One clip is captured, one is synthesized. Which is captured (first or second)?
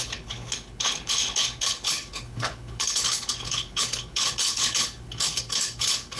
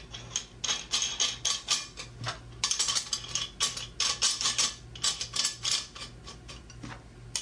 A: second